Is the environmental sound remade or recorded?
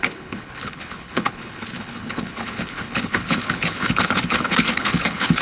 remade